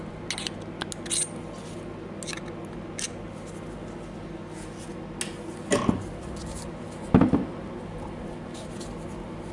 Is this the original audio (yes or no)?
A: yes